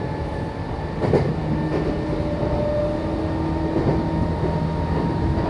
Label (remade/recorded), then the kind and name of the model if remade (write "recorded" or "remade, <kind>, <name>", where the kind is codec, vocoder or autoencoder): recorded